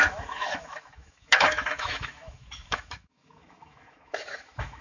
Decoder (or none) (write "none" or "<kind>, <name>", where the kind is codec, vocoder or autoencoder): autoencoder, DAC-VAE